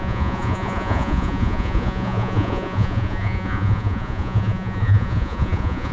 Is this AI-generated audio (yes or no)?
yes